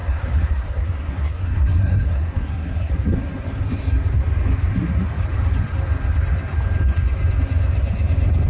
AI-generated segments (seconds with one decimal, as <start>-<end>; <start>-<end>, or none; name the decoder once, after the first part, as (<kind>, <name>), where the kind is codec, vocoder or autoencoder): 0.0-2.9 (codec, SNAC)